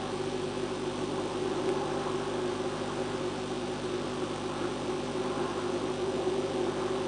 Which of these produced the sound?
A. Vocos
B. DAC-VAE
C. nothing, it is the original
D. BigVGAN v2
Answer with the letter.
C